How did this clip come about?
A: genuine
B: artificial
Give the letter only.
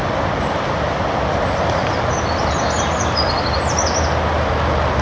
A